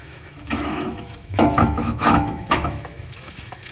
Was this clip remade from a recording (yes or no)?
yes